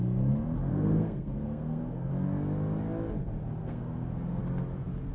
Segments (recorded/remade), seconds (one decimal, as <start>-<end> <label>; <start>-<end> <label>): 0.0-0.7 recorded; 0.7-2.1 remade; 2.1-3.6 recorded; 3.6-4.4 remade; 4.4-5.1 recorded